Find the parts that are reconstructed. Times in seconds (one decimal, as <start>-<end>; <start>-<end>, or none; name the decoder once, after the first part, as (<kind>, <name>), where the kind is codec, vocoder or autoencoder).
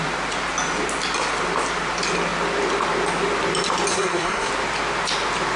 3.9-4.5 (codec, SNAC)